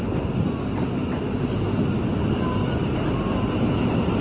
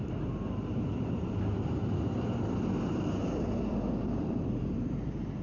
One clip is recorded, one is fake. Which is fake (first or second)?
second